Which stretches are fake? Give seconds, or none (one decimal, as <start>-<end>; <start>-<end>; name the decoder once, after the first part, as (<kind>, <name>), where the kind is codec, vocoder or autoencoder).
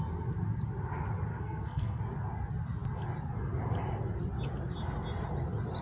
1.3-2.0 (codec, SNAC)